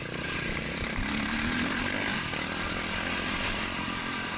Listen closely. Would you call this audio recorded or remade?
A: recorded